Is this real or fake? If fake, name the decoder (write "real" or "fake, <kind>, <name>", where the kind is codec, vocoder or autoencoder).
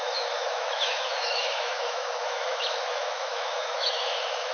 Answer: fake, autoencoder, DAC-VAE